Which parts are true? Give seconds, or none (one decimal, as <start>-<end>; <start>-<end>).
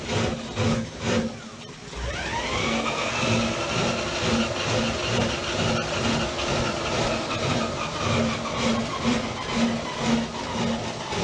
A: 0.0-2.6; 3.2-11.2